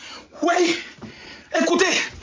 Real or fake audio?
real